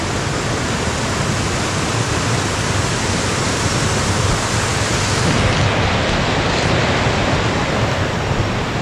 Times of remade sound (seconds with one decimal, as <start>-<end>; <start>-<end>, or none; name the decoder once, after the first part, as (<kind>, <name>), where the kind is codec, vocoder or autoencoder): none